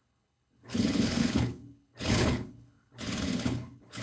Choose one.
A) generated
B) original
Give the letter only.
A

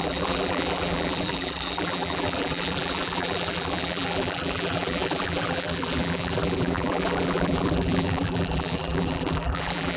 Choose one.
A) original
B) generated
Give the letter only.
B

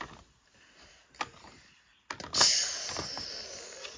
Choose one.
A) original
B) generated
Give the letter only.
A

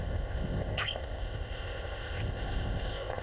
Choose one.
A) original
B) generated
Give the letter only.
B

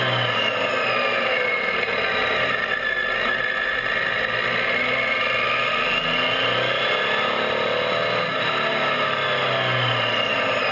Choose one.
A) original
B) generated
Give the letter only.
A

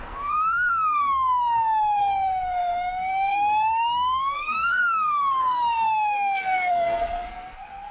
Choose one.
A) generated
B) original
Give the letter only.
A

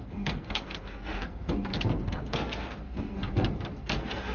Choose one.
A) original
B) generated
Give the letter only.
B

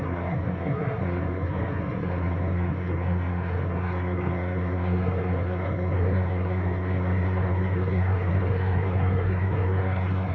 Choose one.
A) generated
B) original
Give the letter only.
A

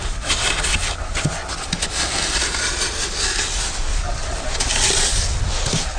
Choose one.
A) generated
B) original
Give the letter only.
B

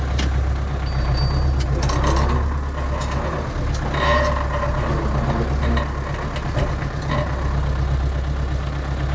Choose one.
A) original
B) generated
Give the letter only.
A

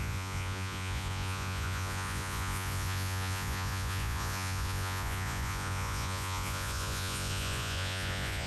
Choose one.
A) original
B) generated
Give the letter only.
B